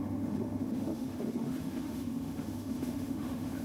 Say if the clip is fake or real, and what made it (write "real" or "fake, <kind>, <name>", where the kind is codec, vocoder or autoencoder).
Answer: fake, autoencoder, DAC-VAE